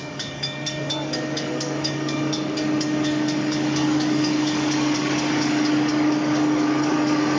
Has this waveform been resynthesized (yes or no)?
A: yes